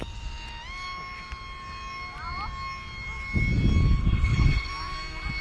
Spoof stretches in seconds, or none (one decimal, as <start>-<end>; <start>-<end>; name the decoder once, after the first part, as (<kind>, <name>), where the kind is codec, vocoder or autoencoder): 4.0-4.7 (codec, HILCodec)